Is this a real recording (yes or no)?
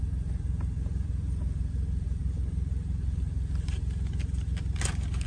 yes